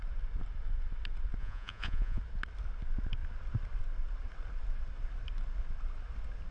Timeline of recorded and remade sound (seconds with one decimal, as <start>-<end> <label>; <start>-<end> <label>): 0.0-1.4 recorded; 1.4-2.2 remade; 2.2-6.5 recorded